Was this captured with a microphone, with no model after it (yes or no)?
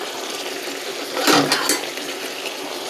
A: yes